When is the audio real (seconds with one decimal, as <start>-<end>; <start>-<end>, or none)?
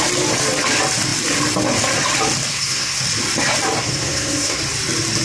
0.0-2.5; 3.0-3.8; 4.6-5.2